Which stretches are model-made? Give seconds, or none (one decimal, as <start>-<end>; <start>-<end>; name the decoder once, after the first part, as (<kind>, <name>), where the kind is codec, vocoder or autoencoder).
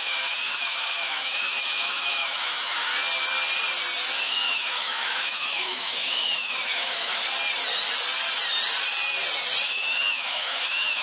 0.0-2.9 (autoencoder, DAC-VAE); 4.2-7.2; 9.7-11.0